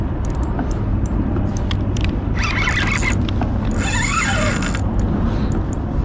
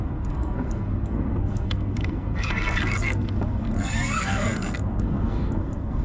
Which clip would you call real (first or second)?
first